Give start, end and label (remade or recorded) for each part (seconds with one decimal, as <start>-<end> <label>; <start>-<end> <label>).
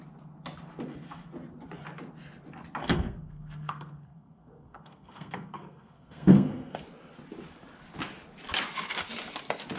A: 0.0-2.8 recorded; 2.8-6.8 remade; 6.8-9.8 recorded